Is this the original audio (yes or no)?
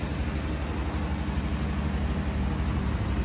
yes